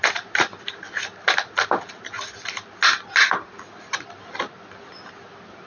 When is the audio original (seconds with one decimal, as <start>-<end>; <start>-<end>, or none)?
0.0-5.7